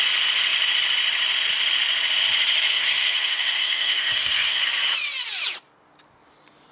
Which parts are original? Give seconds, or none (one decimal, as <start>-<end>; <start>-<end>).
0.0-2.7; 4.6-6.7